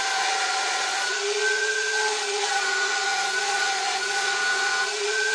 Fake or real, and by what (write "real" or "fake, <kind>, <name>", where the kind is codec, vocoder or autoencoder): fake, vocoder, Vocos